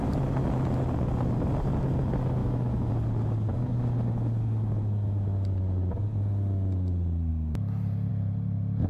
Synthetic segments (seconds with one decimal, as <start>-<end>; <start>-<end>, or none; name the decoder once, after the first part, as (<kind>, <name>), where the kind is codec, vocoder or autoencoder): 2.4-2.9 (autoencoder, DAC-VAE)